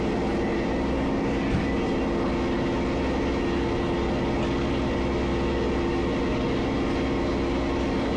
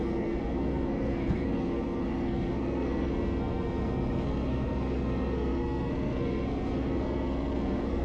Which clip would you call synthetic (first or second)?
second